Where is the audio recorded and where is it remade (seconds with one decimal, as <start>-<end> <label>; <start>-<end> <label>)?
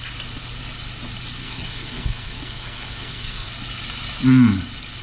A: 0.0-1.4 recorded; 1.4-3.5 remade; 3.5-5.0 recorded